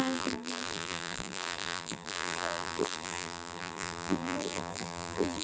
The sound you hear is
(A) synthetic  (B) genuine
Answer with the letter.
A